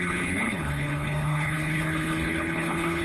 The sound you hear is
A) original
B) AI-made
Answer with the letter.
B